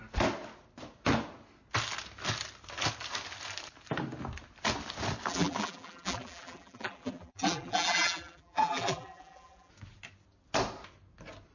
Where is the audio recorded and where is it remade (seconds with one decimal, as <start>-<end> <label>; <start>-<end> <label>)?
0.0-5.3 recorded; 5.3-9.7 remade; 9.7-11.5 recorded